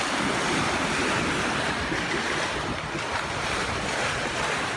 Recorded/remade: recorded